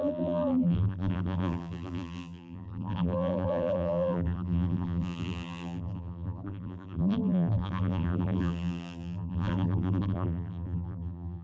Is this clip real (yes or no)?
no